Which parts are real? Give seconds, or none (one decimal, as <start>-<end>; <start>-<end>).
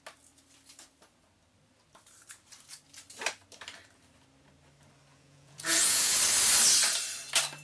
0.0-5.1; 6.2-7.6